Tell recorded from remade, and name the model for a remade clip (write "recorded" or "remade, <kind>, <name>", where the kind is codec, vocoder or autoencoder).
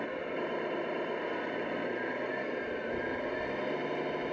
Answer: recorded